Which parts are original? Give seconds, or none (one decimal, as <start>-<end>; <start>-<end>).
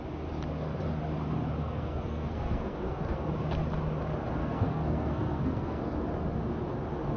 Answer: 0.0-1.6; 3.3-4.4; 5.8-7.2